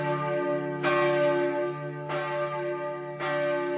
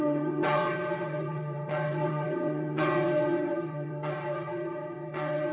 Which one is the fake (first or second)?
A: second